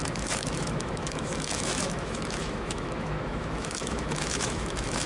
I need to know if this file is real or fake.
fake